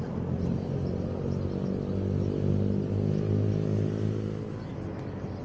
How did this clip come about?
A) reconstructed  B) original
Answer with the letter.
B